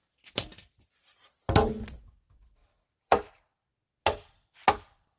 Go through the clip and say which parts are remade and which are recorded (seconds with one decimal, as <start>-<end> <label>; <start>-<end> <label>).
0.0-2.6 recorded; 2.6-3.3 remade; 3.3-5.2 recorded